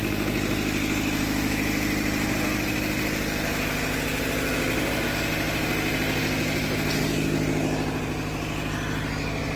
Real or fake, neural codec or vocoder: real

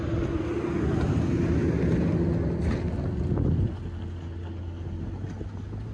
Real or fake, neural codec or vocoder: real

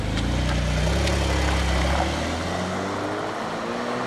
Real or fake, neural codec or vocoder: real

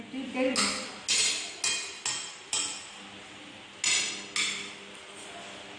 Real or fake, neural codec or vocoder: real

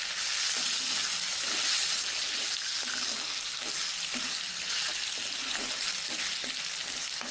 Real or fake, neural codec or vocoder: real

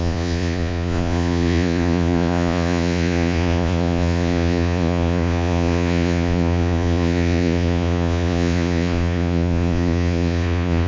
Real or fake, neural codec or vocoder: fake, vocoder, Vocos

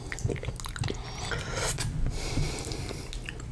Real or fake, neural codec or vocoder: real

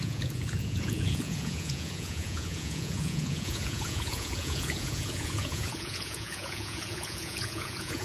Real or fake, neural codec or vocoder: fake, vocoder, Vocos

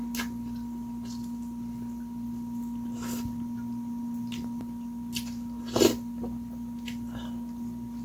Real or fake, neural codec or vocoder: real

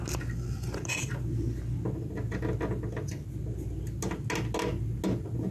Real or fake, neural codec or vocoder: real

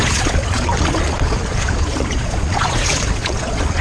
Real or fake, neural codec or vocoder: fake, vocoder, Vocos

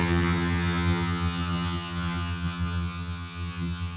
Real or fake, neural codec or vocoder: fake, vocoder, HiFi-GAN